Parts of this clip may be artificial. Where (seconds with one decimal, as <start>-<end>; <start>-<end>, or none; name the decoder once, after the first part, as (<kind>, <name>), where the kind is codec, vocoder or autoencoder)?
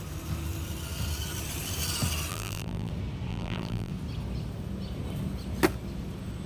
2.3-2.9 (vocoder, BigVGAN v2); 3.3-3.9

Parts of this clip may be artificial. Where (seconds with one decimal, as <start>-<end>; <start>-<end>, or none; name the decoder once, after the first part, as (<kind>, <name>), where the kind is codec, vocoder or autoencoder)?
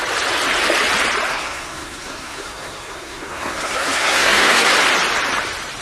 1.3-4.7 (codec, SNAC)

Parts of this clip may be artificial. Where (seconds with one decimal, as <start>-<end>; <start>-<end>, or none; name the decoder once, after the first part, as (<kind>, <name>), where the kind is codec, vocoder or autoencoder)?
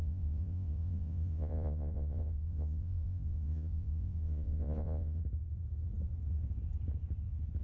0.0-5.2 (vocoder, Vocos)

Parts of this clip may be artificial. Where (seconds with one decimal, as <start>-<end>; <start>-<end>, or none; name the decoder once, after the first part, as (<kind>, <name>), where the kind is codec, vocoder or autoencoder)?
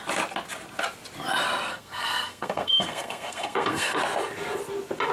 1.7-4.0 (codec, SNAC)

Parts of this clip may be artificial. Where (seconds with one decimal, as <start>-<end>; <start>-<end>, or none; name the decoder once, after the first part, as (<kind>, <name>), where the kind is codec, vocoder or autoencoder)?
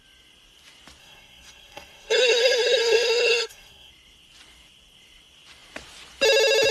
1.0-3.9 (codec, SNAC)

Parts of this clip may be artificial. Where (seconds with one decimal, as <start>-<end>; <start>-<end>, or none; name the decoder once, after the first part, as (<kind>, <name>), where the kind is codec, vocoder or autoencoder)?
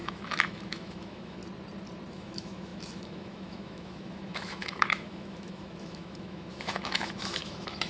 0.0-1.4 (autoencoder, DAC-VAE); 2.1-7.9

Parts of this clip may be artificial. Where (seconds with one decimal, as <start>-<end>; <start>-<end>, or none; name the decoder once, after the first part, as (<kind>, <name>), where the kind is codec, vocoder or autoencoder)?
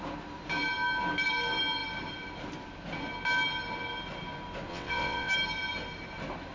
4.7-5.3 (vocoder, WaveNeXt)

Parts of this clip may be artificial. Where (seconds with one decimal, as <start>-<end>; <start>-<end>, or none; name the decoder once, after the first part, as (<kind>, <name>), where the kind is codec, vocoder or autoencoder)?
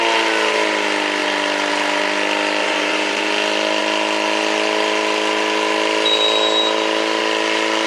2.6-3.3 (vocoder, BigVGAN v2)